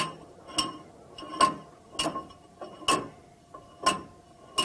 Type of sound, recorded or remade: recorded